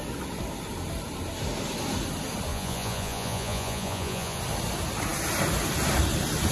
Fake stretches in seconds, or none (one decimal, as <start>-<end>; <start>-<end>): 2.5-4.4